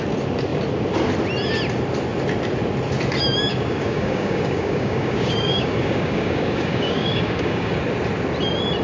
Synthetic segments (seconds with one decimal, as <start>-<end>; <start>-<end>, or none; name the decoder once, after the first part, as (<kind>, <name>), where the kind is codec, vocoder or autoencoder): 3.5-7.8 (codec, DAC)